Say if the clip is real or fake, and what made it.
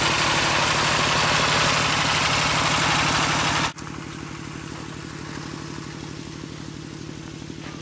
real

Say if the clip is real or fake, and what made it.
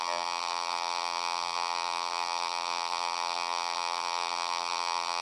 fake, vocoder, BigVGAN v2